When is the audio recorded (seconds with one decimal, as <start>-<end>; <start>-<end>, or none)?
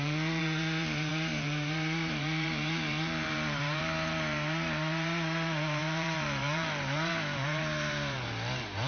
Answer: none